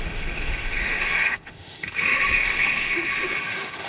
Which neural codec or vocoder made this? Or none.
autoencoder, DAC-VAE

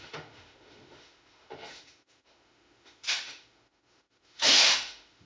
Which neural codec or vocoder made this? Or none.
autoencoder, DAC-VAE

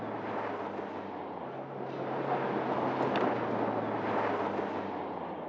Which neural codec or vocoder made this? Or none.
none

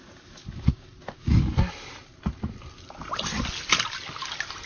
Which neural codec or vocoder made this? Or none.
none